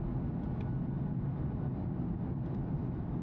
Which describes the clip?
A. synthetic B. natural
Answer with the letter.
A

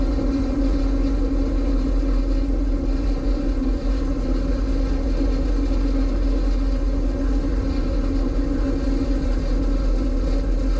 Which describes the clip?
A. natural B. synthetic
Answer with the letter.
A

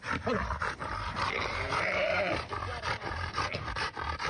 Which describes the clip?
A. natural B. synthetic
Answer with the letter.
B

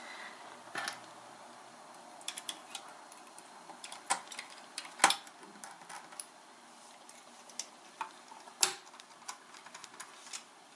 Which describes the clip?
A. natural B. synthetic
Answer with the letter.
A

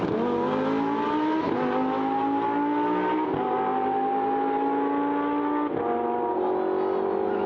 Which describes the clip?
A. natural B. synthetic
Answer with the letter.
A